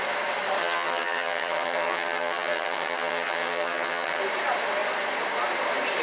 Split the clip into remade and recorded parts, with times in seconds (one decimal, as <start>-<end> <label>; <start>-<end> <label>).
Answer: 0.0-0.6 recorded; 0.6-4.2 remade; 4.2-6.0 recorded